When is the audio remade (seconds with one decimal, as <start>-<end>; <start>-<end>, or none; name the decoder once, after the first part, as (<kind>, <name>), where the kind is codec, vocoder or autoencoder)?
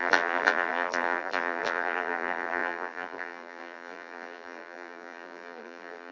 0.0-6.1 (vocoder, BigVGAN v2)